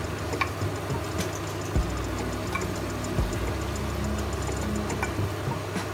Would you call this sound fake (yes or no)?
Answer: no